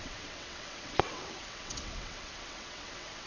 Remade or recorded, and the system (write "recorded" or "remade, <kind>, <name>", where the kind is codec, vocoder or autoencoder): remade, vocoder, WaveNeXt